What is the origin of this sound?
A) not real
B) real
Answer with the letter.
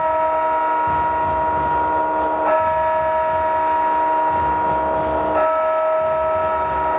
B